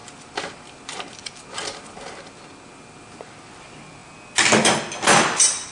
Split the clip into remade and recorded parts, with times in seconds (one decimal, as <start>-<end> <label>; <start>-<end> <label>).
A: 0.0-5.7 recorded